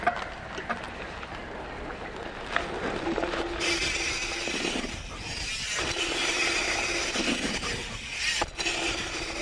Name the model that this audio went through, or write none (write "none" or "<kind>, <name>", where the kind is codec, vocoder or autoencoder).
none